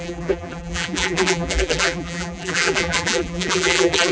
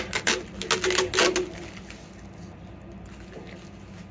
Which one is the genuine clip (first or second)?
second